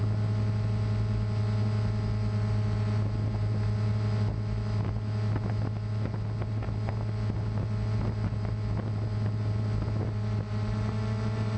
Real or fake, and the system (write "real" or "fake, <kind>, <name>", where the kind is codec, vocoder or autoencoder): real